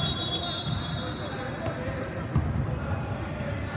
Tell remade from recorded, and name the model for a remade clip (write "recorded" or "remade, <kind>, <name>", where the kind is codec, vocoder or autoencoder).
recorded